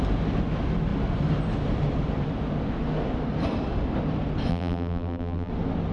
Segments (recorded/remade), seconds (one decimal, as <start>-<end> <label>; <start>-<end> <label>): 0.0-4.5 recorded; 4.5-5.5 remade; 5.5-5.9 recorded